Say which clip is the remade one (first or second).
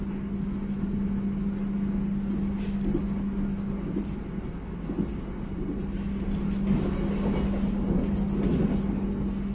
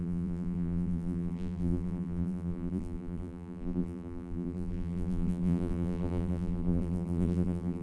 second